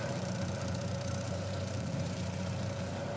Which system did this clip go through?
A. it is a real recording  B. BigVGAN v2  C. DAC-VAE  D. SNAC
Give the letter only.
B